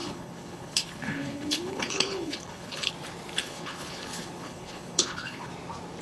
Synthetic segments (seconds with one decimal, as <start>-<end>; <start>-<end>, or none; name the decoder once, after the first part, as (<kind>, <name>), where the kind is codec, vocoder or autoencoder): 0.0-2.9 (codec, HILCodec); 3.4-5.5